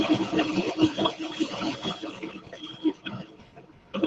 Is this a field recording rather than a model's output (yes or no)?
no